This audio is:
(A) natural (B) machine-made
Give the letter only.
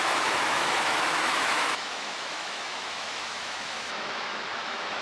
B